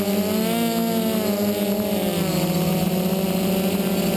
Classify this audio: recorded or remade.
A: recorded